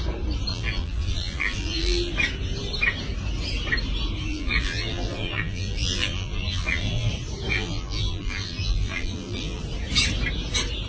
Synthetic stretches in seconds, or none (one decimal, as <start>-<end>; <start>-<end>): 0.5-2.1; 4.3-7.1; 7.5-9.6